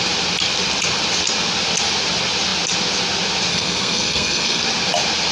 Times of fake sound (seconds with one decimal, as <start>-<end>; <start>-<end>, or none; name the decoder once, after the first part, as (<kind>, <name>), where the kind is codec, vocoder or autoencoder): 3.5-4.6 (codec, SNAC)